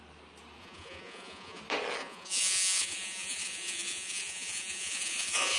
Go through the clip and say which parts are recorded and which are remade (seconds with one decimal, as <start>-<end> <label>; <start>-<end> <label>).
0.0-0.6 recorded; 0.6-1.6 remade; 1.6-2.0 recorded; 2.0-5.6 remade

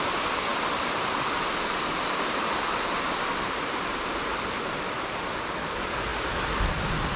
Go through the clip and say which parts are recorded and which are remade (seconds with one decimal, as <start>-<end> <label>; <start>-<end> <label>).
0.0-7.2 recorded